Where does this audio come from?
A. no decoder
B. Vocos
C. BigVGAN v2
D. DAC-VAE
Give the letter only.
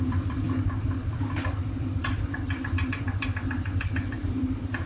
C